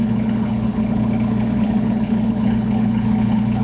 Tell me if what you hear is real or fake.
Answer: fake